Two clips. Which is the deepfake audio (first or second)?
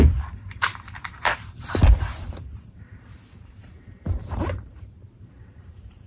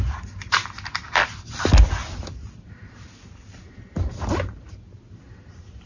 first